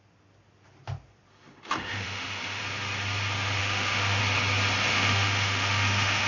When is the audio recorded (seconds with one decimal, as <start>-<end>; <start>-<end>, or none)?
0.0-1.3; 2.6-3.6; 4.2-4.9